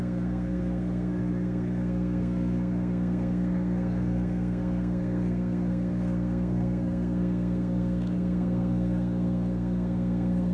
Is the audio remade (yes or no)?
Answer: yes